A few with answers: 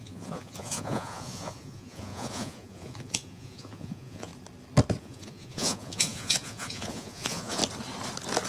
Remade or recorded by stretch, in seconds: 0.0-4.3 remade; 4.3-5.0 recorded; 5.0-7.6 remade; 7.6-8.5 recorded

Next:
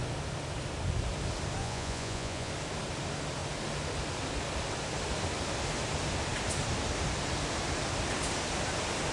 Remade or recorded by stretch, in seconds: 0.0-1.6 recorded; 1.6-2.5 remade; 2.5-9.1 recorded